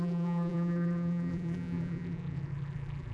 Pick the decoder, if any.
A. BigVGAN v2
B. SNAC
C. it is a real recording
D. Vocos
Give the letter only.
A